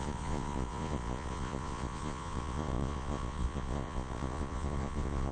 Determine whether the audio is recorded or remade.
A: remade